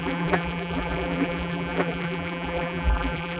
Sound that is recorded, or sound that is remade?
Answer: remade